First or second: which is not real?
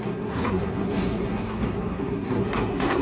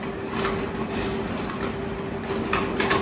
first